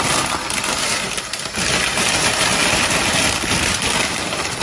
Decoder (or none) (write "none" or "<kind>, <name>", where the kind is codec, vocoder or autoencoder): none